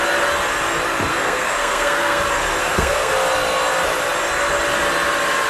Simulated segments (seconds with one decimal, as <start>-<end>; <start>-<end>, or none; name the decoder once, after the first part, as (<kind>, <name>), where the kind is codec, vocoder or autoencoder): 1.1-2.2 (codec, SNAC); 2.6-3.1